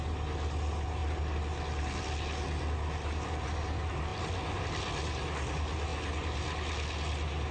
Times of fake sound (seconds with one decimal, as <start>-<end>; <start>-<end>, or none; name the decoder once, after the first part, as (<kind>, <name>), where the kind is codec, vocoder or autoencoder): none